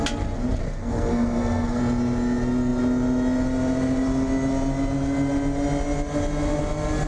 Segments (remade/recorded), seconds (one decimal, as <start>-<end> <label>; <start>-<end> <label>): 0.0-0.6 recorded; 0.6-1.8 remade; 1.8-7.1 recorded